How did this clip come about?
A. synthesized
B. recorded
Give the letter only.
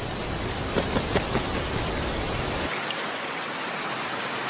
B